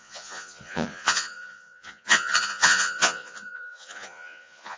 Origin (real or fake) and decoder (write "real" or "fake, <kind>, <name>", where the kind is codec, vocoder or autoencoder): fake, vocoder, Vocos